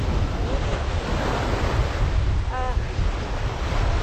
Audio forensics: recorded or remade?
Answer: recorded